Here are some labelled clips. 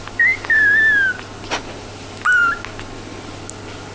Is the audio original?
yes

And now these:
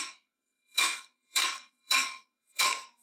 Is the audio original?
no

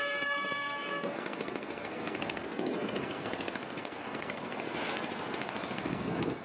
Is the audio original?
no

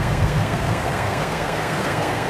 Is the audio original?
no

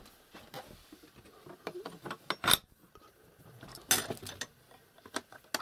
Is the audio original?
yes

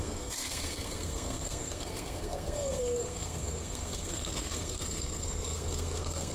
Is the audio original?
no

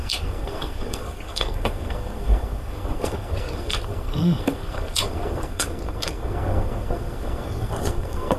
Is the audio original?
no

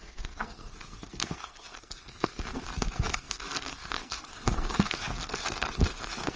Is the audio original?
no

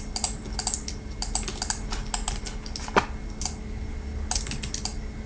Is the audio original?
yes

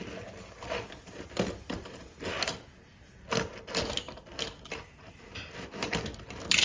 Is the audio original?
yes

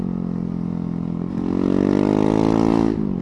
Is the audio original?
yes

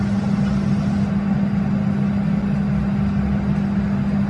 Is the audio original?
yes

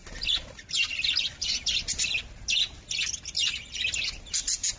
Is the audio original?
yes